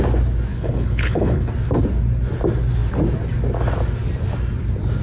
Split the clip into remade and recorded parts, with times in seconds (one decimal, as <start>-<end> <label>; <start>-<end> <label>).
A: 0.0-0.5 recorded; 0.5-1.5 remade; 1.5-5.0 recorded